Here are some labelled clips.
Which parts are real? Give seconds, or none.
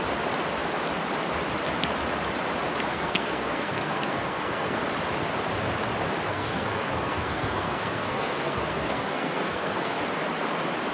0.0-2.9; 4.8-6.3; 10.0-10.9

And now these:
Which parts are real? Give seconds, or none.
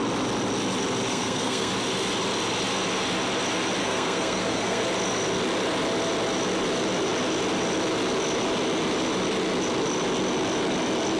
0.0-1.1; 1.7-3.8; 4.8-11.2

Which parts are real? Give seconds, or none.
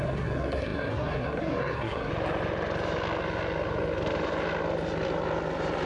2.1-5.9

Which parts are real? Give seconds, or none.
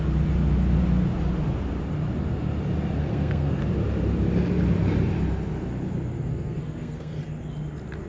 0.0-3.0; 3.6-6.3; 7.2-8.1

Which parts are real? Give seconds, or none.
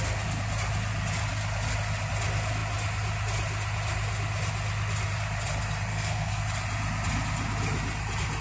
0.0-5.9; 6.4-8.4